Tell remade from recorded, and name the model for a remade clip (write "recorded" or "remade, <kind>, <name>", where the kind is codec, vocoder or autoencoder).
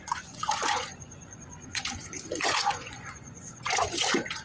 remade, vocoder, Vocos